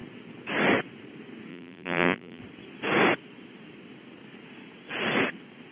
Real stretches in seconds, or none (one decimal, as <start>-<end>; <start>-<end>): 0.0-1.5; 2.4-5.7